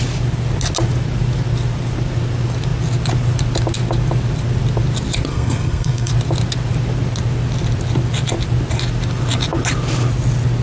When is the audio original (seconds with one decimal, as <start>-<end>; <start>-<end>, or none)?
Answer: 0.0-5.3; 6.1-10.6